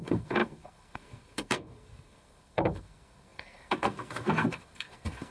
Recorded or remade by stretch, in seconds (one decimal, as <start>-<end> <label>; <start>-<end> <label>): 0.0-5.3 remade

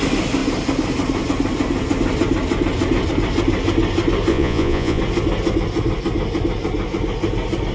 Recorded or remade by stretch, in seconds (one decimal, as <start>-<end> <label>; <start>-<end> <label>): 0.0-4.3 recorded; 4.3-5.0 remade; 5.0-7.7 recorded

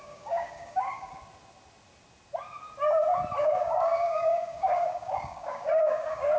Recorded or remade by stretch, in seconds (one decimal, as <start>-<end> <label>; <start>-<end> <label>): 0.0-1.2 remade; 1.2-3.4 recorded; 3.4-6.4 remade